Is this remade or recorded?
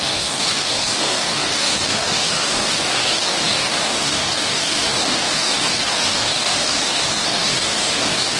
remade